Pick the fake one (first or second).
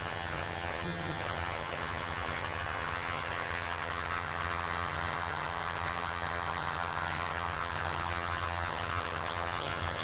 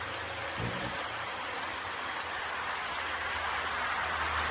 first